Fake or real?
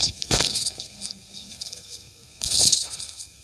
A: fake